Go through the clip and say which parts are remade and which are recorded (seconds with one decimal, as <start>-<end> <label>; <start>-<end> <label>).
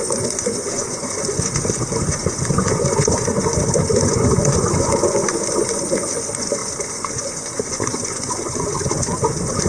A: 0.0-9.7 remade